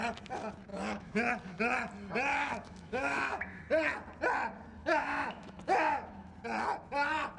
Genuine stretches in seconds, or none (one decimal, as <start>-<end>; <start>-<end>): 0.0-0.7; 1.3-2.3; 3.6-4.8; 6.3-7.4

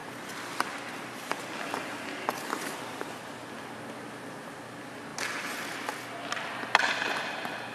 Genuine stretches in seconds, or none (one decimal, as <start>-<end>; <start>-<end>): 0.0-7.7

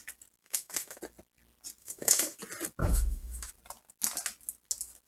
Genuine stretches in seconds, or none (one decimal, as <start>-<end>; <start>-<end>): 0.0-0.4; 1.0-1.8; 2.4-2.8; 3.5-5.1

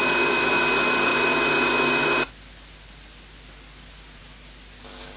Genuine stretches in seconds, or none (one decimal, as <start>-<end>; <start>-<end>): 0.0-5.2

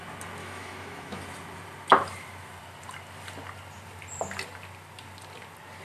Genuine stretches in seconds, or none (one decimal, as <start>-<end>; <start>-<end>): 0.0-0.4; 1.2-5.8

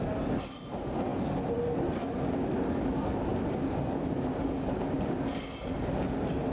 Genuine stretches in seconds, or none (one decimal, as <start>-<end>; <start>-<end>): 0.0-6.5

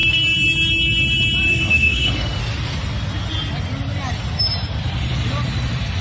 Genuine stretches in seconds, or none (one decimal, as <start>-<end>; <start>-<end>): 0.0-1.5; 2.4-6.0

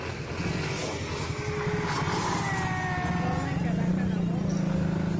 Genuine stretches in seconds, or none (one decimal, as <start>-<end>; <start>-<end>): 0.0-5.2